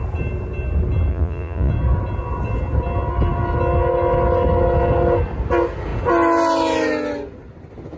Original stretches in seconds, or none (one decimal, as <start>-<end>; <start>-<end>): 0.0-1.1; 1.7-8.0